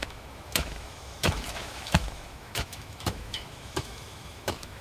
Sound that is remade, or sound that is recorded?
remade